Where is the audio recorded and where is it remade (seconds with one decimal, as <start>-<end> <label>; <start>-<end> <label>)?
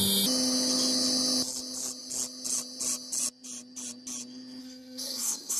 0.0-4.6 recorded; 4.6-5.6 remade